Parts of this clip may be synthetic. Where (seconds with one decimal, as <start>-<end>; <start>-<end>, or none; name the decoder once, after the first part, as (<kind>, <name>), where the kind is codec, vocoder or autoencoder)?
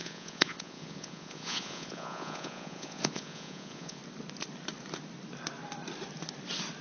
0.0-4.0 (vocoder, Vocos)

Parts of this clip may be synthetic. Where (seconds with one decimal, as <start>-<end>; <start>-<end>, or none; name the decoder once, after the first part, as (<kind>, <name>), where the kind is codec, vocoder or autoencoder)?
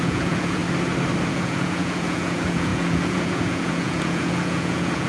0.0-0.6 (vocoder, Vocos); 1.3-5.1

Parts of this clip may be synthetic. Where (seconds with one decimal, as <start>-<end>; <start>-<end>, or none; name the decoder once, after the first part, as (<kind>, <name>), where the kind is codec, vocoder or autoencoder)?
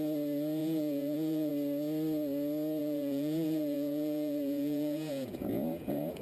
0.6-1.5 (vocoder, Vocos); 2.8-6.2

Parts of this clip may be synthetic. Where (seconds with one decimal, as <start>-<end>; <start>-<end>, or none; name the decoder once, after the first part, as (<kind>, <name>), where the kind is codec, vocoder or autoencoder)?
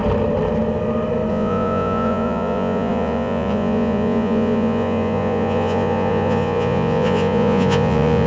1.3-8.3 (vocoder, Vocos)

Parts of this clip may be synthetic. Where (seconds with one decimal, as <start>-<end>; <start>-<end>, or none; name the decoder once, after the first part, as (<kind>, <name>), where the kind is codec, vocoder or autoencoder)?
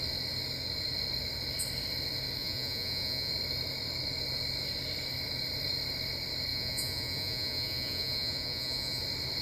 2.4-3.3 (vocoder, Vocos); 6.5-9.0